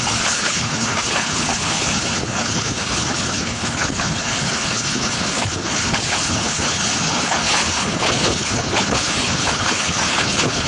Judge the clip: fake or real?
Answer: fake